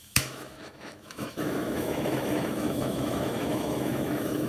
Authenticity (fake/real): fake